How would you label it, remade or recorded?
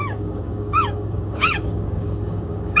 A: remade